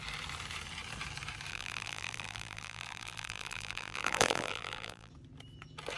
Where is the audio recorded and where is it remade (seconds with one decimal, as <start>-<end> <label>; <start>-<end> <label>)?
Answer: 0.0-1.5 recorded; 1.5-5.1 remade; 5.1-6.0 recorded